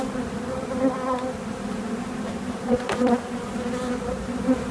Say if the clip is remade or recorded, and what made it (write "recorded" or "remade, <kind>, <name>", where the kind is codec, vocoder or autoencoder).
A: recorded